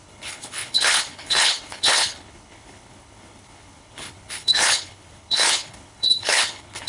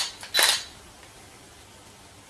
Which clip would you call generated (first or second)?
first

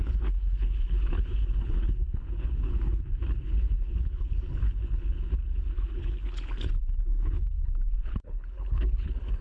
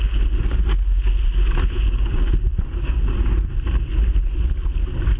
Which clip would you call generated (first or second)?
first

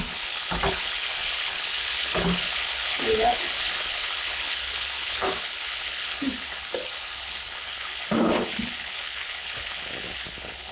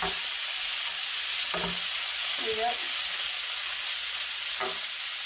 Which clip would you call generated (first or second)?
first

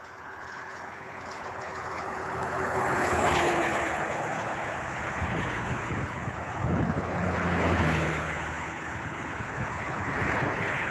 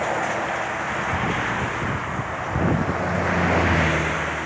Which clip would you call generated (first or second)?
first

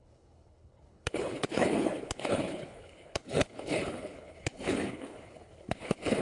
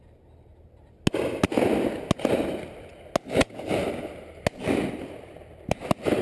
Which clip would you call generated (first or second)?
first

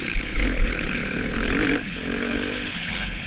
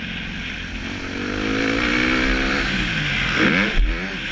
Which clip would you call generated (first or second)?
first